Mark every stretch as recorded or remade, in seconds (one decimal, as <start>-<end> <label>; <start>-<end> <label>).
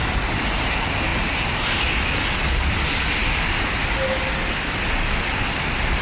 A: 0.0-6.0 recorded